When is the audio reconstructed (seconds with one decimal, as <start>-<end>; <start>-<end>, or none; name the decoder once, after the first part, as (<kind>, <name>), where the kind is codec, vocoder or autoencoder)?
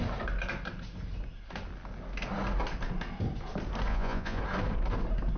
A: 3.9-4.4 (vocoder, Vocos)